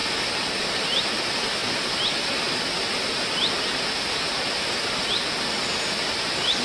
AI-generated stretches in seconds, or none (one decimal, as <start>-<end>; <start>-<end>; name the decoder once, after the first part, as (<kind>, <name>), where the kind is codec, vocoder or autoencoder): none